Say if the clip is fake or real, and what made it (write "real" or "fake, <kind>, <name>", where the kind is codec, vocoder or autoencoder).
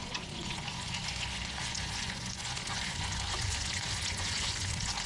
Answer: fake, vocoder, Vocos